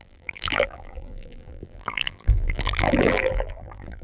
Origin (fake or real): fake